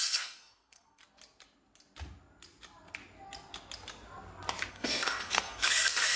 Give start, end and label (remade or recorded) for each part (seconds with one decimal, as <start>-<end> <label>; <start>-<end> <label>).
0.0-1.0 remade; 1.0-4.7 recorded; 4.7-6.2 remade